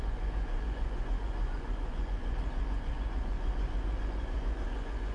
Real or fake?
fake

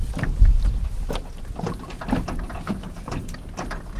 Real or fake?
real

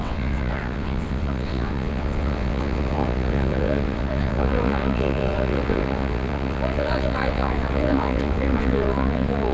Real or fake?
fake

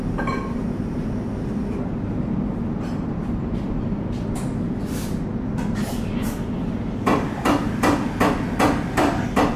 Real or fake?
real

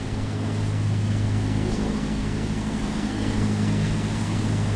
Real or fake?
fake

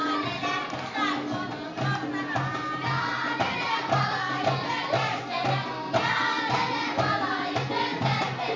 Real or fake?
real